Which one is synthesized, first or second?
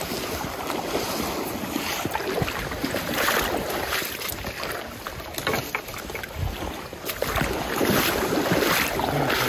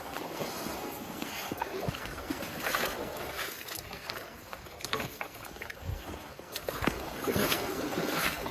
second